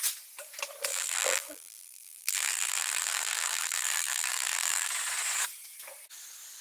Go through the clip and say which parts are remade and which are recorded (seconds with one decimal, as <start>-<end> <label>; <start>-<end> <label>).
0.0-0.9 recorded; 0.9-4.9 remade; 4.9-6.6 recorded